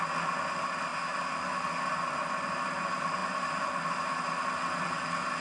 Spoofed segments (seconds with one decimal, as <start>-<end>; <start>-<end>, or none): none